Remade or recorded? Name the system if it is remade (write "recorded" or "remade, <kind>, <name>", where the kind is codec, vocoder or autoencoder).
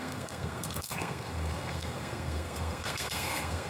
remade, codec, SNAC